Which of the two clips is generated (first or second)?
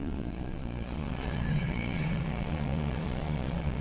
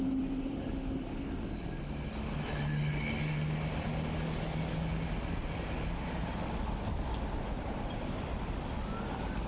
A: first